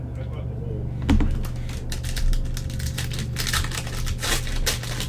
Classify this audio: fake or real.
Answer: real